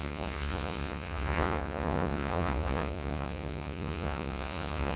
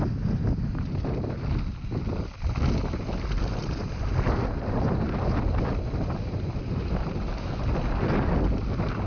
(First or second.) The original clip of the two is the second